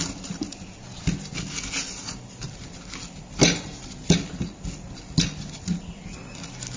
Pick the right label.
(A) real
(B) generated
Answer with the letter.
A